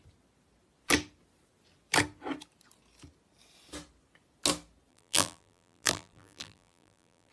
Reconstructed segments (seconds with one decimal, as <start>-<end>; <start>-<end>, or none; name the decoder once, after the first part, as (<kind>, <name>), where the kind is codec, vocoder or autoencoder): 4.9-7.3 (vocoder, BigVGAN v2)